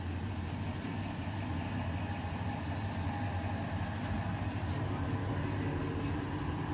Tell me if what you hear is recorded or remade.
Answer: recorded